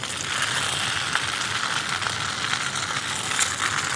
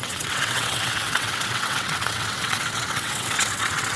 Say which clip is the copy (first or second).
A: second